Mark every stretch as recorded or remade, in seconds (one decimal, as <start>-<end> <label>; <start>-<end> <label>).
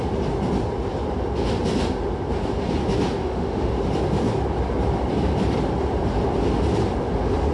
0.0-3.2 recorded; 3.2-3.7 remade; 3.7-7.5 recorded